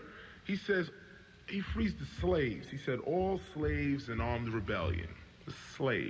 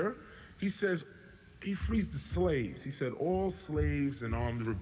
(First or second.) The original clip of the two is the first